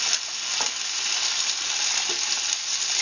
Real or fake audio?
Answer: real